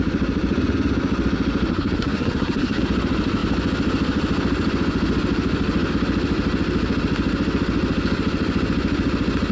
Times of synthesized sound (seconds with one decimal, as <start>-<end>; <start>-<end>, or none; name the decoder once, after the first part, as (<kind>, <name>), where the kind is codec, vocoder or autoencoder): 1.7-2.8 (codec, SNAC)